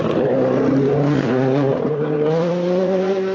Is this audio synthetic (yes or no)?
yes